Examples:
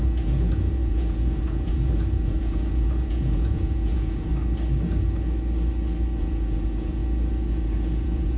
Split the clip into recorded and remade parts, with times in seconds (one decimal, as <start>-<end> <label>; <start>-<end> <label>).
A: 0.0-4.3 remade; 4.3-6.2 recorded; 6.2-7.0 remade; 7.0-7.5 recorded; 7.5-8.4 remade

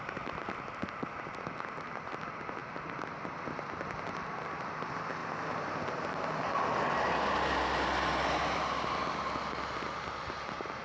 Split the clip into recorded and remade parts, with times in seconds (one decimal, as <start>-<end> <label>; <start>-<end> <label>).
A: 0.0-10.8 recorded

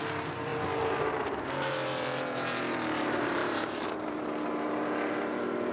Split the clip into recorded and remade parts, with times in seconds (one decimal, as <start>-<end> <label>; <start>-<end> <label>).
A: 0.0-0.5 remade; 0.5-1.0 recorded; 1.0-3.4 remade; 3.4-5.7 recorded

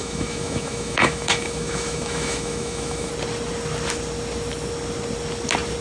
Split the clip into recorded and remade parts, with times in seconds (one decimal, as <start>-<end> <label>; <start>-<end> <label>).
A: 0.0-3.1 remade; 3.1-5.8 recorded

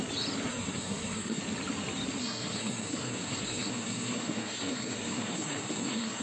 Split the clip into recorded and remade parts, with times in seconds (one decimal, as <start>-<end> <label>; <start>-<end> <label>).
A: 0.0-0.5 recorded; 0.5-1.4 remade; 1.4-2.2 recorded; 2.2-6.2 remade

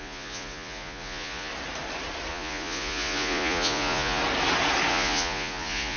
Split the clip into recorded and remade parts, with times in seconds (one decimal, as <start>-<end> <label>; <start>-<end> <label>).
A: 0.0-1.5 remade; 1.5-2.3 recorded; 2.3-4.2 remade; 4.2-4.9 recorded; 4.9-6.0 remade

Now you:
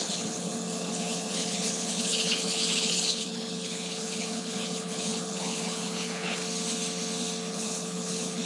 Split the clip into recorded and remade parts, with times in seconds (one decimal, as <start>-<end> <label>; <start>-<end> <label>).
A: 0.0-6.4 remade; 6.4-7.5 recorded; 7.5-8.5 remade

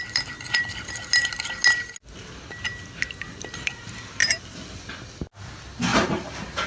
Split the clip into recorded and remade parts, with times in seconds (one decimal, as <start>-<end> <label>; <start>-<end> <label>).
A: 0.0-5.9 recorded; 5.9-6.7 remade